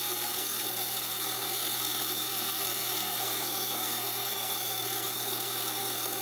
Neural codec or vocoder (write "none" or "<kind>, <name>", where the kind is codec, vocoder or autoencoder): codec, SNAC